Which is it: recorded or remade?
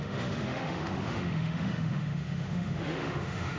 remade